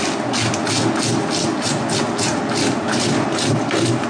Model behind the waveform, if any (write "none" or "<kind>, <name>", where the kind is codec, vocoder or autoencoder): none